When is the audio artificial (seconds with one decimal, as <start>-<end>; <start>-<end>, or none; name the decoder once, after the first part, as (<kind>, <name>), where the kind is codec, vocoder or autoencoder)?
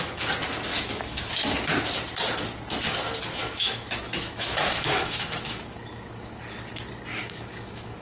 0.7-1.3 (autoencoder, DAC-VAE); 3.4-6.4; 7.1-8.0